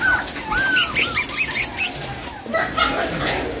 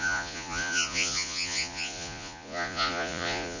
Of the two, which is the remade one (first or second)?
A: second